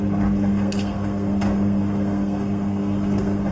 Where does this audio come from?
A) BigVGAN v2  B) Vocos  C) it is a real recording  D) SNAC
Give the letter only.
D